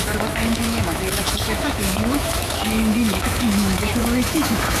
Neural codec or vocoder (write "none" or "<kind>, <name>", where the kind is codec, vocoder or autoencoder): autoencoder, DAC-VAE